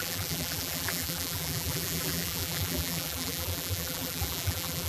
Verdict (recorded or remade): remade